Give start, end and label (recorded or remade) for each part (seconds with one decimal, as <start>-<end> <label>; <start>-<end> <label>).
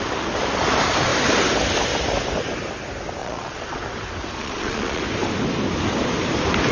0.0-3.2 recorded; 3.2-3.8 remade; 3.8-4.4 recorded; 4.4-5.0 remade; 5.0-6.7 recorded